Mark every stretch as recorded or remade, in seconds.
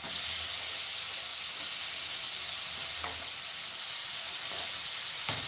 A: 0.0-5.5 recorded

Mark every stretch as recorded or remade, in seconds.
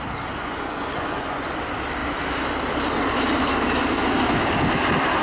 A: 0.0-0.4 recorded; 0.4-1.5 remade; 1.5-5.2 recorded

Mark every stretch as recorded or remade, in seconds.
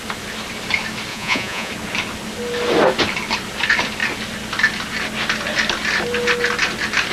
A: 0.0-1.1 recorded; 1.1-1.7 remade; 1.7-7.1 recorded